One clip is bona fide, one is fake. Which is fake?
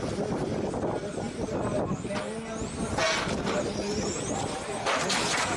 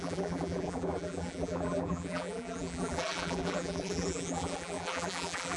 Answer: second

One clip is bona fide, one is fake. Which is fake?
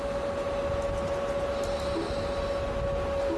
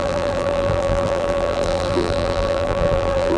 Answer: second